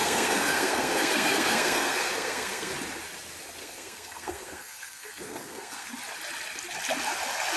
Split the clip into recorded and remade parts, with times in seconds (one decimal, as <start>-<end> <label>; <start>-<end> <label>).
0.0-2.7 remade; 2.7-3.6 recorded; 3.6-5.9 remade; 5.9-7.6 recorded